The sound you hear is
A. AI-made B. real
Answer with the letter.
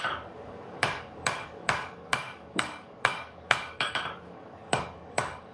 A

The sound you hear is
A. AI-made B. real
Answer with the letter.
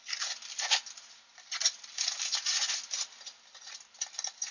B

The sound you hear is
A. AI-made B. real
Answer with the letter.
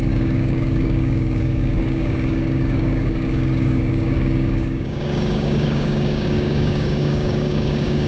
A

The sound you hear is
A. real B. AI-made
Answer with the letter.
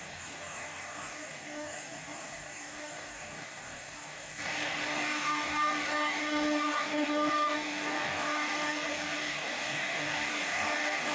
B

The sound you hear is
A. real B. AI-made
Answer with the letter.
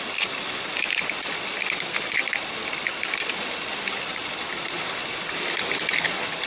A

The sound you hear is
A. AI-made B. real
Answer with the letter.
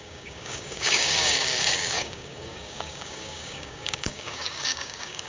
A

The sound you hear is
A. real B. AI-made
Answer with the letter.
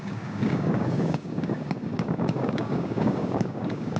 B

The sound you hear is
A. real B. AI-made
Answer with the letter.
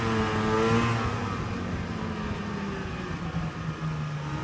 A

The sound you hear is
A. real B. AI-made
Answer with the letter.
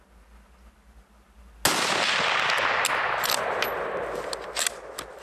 A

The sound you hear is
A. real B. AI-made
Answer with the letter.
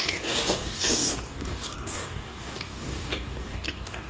B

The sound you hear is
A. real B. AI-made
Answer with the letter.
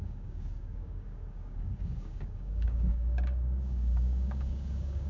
B